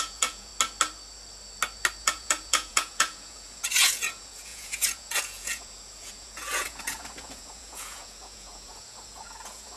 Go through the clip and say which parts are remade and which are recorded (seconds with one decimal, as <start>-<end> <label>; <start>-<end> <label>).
0.0-0.5 remade; 0.5-2.0 recorded; 2.0-9.8 remade